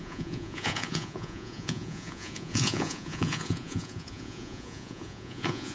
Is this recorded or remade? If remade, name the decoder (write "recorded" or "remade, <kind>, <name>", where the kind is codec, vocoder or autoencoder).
remade, vocoder, Vocos